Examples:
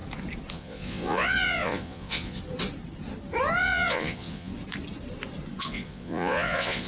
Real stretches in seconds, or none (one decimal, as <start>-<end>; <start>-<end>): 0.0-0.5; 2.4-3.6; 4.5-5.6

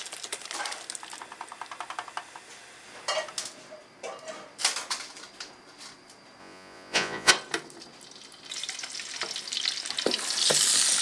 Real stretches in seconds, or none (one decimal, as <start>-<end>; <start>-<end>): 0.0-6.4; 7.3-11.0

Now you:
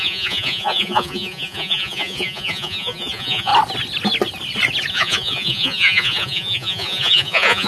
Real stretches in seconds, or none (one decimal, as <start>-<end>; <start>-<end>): 3.5-4.9

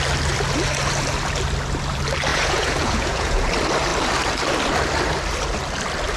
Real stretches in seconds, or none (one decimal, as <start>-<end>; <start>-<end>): 0.0-2.3; 3.5-6.2

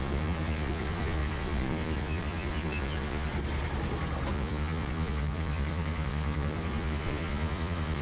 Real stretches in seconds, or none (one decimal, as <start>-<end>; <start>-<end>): 3.3-4.3

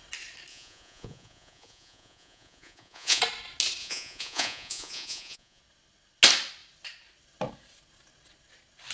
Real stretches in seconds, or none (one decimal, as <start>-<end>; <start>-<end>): 0.0-0.5; 3.2-3.8; 5.6-8.9

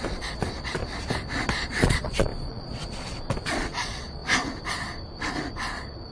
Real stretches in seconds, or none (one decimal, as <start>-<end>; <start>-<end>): 0.8-1.5; 4.2-6.1